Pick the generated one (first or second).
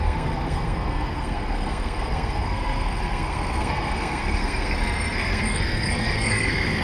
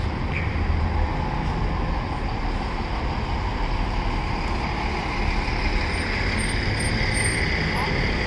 first